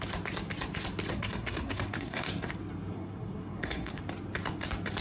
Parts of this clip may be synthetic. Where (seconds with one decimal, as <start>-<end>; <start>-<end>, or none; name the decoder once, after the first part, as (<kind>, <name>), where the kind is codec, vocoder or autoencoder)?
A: 1.1-2.5 (codec, SNAC); 2.9-4.0